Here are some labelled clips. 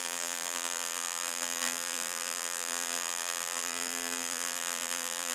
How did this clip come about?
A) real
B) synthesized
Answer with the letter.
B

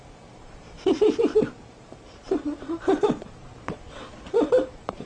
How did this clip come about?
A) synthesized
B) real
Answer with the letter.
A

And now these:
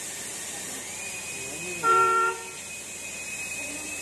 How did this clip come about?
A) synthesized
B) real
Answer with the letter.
A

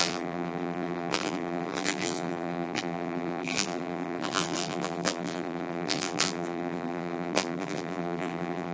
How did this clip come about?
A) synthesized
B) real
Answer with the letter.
A